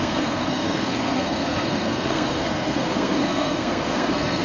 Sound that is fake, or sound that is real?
fake